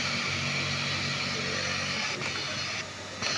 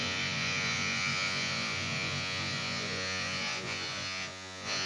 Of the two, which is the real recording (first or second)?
first